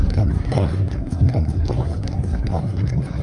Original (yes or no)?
no